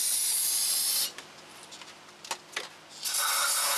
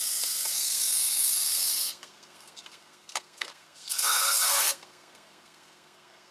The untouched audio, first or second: first